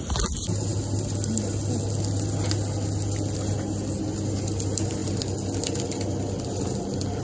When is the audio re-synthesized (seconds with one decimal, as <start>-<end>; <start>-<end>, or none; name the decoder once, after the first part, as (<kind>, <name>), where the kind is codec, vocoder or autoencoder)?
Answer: none